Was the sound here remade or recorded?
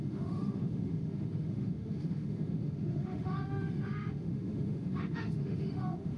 remade